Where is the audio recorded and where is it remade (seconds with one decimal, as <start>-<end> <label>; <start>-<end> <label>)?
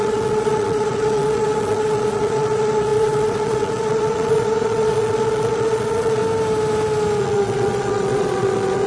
0.0-6.2 remade; 6.2-7.2 recorded; 7.2-8.9 remade